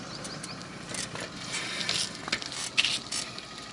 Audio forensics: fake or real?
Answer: real